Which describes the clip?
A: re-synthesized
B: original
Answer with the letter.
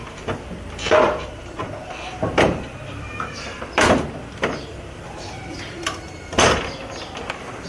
A